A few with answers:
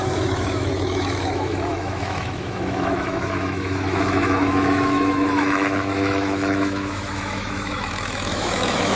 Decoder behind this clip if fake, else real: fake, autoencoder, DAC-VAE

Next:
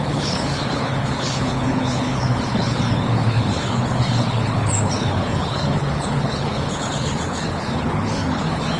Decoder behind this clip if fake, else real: fake, codec, HILCodec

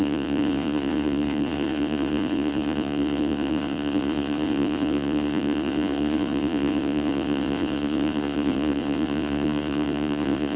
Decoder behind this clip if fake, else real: fake, vocoder, Vocos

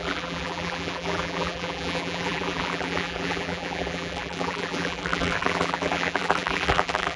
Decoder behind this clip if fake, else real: fake, vocoder, BigVGAN v2